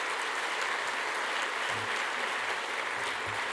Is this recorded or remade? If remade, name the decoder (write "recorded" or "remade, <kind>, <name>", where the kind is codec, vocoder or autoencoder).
recorded